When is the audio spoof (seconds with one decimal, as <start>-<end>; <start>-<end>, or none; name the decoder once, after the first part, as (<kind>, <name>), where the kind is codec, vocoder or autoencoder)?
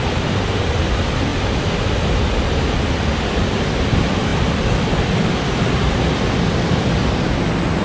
none